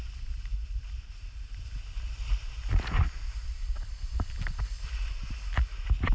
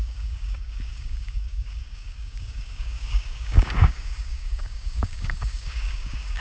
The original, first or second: first